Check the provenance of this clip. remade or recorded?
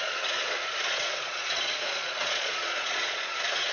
remade